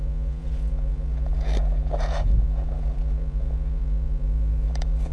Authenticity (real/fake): fake